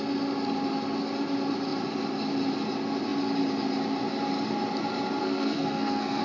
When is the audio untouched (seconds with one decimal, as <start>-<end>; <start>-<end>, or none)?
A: 0.0-5.2